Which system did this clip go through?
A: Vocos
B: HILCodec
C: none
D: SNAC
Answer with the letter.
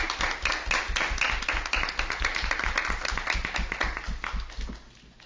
C